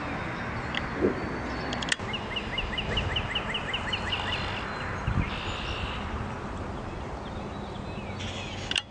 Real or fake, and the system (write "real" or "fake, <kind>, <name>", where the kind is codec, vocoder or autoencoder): real